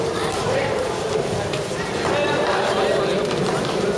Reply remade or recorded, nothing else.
recorded